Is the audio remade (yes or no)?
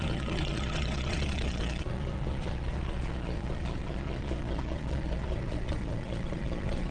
yes